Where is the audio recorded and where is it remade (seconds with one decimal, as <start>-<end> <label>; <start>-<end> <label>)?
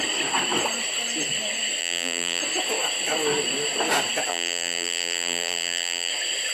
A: 0.0-1.8 recorded; 1.8-2.4 remade; 2.4-4.3 recorded; 4.3-6.1 remade; 6.1-6.5 recorded